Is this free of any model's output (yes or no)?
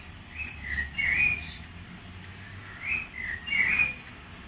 yes